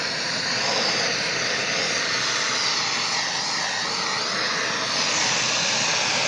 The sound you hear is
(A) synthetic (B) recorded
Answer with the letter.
B